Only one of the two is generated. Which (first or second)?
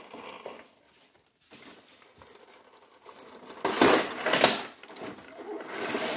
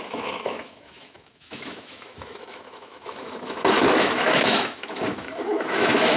second